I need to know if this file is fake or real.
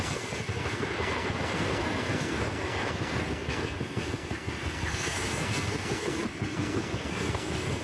fake